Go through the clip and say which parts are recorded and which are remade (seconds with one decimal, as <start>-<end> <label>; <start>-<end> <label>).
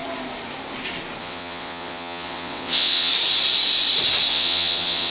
0.0-1.2 recorded; 1.2-3.1 remade; 3.1-4.3 recorded; 4.3-5.1 remade